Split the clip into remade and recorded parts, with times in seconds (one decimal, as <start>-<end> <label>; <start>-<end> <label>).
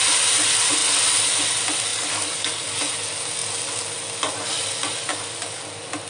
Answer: 0.0-1.9 recorded; 1.9-2.8 remade; 2.8-5.1 recorded; 5.1-5.6 remade; 5.6-6.1 recorded